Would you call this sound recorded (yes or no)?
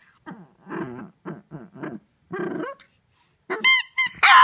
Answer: yes